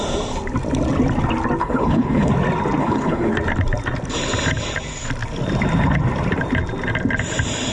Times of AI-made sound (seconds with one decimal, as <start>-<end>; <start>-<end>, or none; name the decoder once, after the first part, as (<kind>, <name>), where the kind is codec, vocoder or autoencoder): 1.6-2.3 (codec, HILCodec); 2.8-3.3